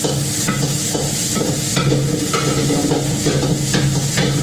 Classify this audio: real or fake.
real